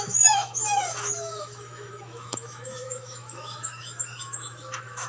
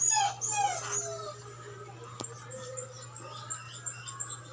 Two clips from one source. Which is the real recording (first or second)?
second